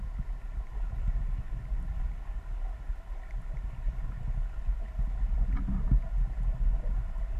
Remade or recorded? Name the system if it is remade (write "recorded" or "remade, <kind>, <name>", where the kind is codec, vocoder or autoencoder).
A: recorded